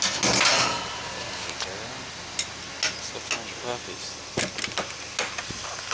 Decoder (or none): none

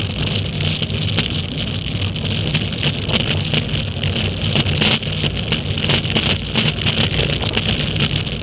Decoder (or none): none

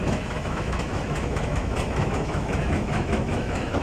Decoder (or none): autoencoder, DAC-VAE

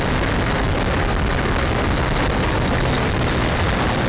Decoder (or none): none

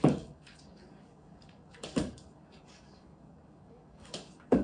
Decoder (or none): codec, DAC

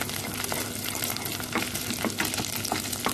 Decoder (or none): none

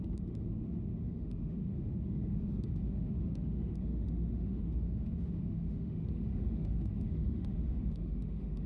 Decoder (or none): autoencoder, DAC-VAE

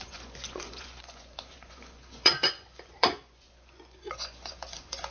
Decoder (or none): vocoder, Vocos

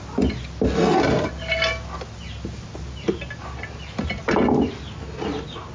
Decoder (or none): none